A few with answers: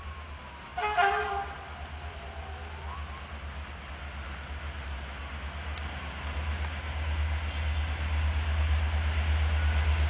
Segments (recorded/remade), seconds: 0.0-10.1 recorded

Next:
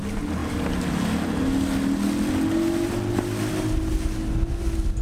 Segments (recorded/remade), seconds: 0.0-5.0 recorded

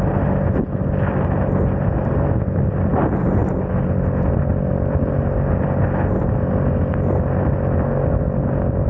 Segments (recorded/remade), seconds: 0.0-8.9 recorded

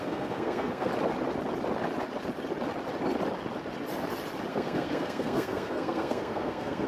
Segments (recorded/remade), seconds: 0.0-0.9 remade; 0.9-4.5 recorded; 4.5-6.9 remade

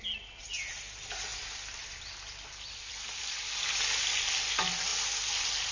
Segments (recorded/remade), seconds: 0.0-5.7 recorded

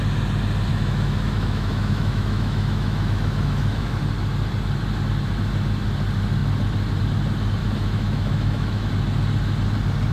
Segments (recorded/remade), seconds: 0.0-0.7 recorded; 0.7-4.0 remade; 4.0-7.6 recorded; 7.6-8.9 remade; 8.9-10.1 recorded

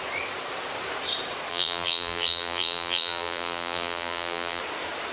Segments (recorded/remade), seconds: 0.0-1.5 recorded; 1.5-4.6 remade; 4.6-5.1 recorded